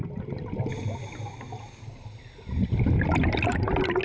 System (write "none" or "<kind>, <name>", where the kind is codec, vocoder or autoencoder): none